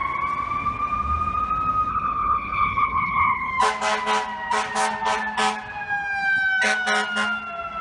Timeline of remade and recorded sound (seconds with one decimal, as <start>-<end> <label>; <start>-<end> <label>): 0.0-1.9 recorded; 1.9-3.5 remade; 3.5-7.8 recorded